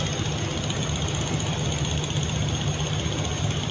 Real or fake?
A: real